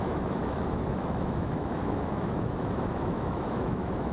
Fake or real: fake